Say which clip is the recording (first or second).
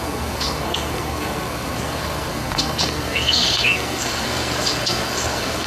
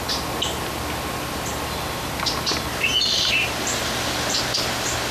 second